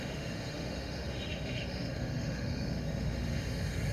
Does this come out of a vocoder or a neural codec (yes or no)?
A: yes